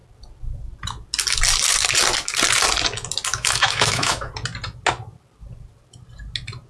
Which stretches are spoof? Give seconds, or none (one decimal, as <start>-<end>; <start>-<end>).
3.3-4.3